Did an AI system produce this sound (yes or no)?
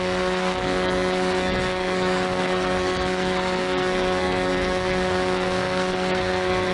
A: yes